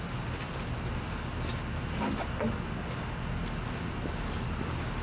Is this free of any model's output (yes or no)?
yes